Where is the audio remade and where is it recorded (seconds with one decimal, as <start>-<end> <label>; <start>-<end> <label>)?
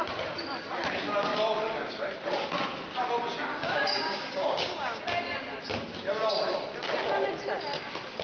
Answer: 0.0-3.5 recorded; 3.5-5.0 remade; 5.0-8.2 recorded